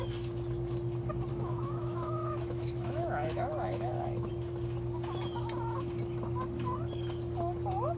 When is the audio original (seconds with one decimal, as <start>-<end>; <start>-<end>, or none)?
0.0-1.3; 4.3-8.0